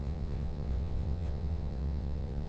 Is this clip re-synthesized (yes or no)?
yes